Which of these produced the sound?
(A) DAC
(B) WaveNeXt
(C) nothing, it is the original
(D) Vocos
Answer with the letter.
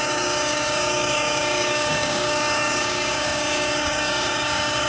A